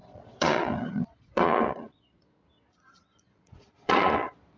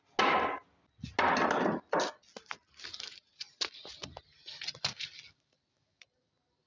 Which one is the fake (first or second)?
first